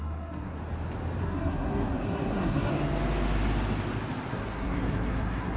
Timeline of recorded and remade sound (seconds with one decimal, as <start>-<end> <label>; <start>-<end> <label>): 0.0-0.6 remade; 0.6-1.2 recorded; 1.2-2.7 remade; 2.7-4.3 recorded; 4.3-5.6 remade